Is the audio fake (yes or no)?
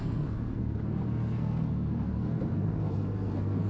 yes